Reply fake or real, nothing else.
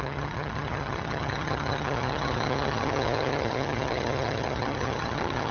fake